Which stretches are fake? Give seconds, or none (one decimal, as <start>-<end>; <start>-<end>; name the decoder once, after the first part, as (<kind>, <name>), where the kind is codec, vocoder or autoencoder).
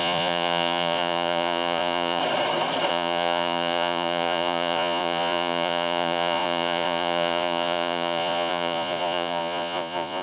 0.0-2.2 (vocoder, Vocos); 2.9-10.2